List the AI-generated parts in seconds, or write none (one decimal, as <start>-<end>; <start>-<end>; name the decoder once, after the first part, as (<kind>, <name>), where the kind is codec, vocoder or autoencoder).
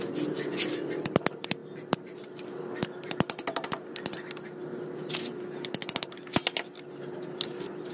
none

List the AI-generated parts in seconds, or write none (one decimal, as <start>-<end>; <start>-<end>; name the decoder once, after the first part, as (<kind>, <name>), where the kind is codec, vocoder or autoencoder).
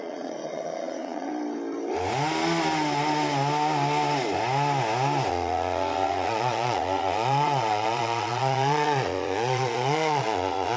0.0-1.3 (vocoder, Vocos); 5.3-10.8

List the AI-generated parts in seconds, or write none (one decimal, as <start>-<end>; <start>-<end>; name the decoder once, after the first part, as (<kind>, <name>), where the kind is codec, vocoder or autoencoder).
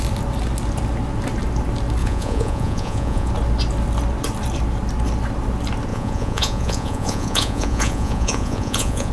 2.0-3.3 (vocoder, Vocos); 5.9-9.1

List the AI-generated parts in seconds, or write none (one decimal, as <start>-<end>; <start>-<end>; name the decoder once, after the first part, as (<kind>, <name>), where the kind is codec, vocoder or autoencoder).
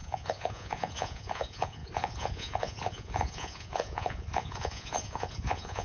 0.0-5.8 (vocoder, Vocos)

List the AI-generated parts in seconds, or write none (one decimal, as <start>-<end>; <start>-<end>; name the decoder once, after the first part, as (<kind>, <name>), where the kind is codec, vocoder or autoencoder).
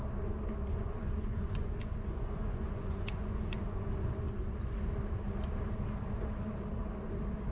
0.7-3.9 (vocoder, Vocos)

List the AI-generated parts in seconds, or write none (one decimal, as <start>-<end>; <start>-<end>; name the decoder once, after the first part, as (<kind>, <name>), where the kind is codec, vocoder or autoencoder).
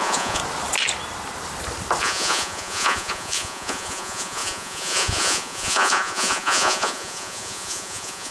0.0-0.4 (vocoder, Vocos); 2.0-8.3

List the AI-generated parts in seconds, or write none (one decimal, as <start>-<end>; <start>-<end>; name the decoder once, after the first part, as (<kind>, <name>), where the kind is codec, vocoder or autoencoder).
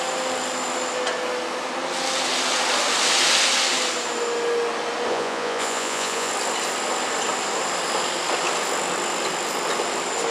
5.1-6.3 (vocoder, Vocos)